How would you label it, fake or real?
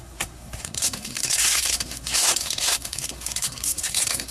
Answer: fake